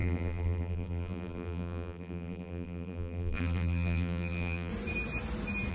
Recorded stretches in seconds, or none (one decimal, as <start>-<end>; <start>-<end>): 4.7-5.7